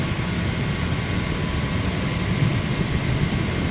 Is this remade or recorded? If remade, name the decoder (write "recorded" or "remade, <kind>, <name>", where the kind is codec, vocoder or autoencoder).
recorded